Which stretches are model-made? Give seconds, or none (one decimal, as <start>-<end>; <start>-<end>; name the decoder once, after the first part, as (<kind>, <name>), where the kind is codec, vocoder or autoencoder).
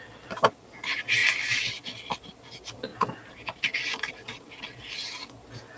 none